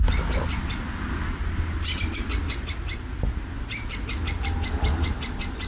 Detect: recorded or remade recorded